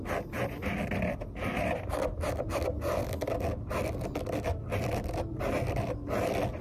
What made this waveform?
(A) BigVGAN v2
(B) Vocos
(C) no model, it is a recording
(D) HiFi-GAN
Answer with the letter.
C